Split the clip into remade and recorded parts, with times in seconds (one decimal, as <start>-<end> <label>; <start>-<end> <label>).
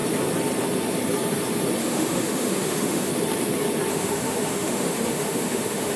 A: 0.0-1.8 recorded; 1.8-3.1 remade; 3.1-3.9 recorded; 3.9-6.0 remade